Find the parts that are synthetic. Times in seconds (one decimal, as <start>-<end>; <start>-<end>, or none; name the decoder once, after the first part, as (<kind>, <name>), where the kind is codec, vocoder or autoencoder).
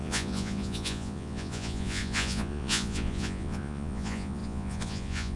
0.0-5.4 (vocoder, Vocos)